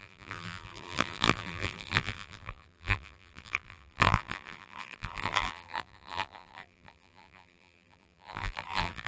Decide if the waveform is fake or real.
fake